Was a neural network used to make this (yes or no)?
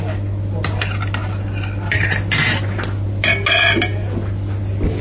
no